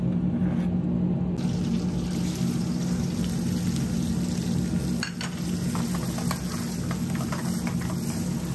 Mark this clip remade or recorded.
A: recorded